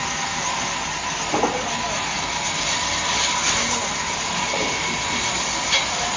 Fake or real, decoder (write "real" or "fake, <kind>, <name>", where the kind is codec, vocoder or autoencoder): real